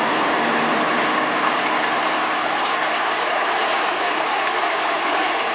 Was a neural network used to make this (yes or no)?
no